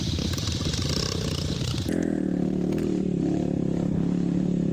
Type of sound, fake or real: real